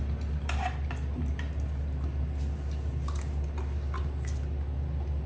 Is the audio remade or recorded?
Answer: recorded